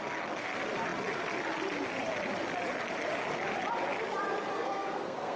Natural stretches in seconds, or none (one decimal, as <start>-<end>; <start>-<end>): 0.0-4.5